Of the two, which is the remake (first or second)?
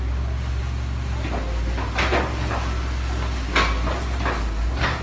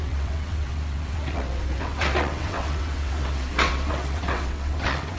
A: second